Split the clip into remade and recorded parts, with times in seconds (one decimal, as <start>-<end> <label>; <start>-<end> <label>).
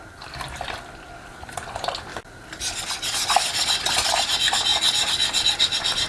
0.0-6.1 recorded